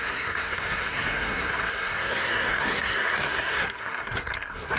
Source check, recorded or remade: remade